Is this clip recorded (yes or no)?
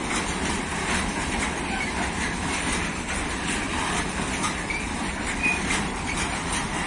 no